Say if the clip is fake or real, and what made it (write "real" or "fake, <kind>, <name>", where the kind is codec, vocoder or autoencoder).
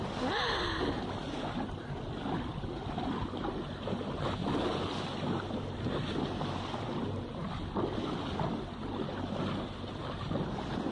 real